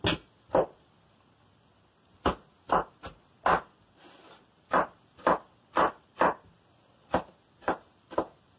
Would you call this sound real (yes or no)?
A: yes